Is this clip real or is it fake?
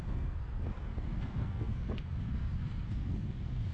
fake